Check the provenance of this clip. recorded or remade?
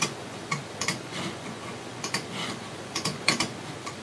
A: remade